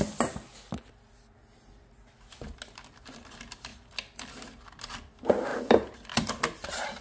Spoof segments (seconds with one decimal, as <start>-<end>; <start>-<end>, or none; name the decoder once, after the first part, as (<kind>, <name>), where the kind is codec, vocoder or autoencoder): none